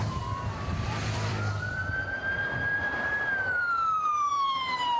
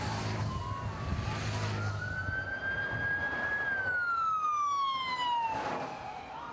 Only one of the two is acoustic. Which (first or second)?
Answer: second